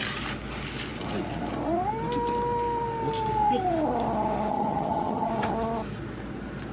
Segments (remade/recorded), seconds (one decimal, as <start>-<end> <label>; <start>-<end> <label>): 0.0-4.5 recorded; 4.5-5.3 remade; 5.3-6.7 recorded